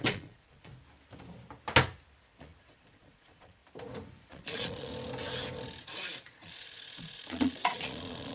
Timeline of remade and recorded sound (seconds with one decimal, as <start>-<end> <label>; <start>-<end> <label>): 0.0-0.7 remade; 0.7-2.4 recorded; 2.4-3.6 remade; 3.6-4.3 recorded; 4.3-4.9 remade; 4.9-5.8 recorded; 5.8-8.3 remade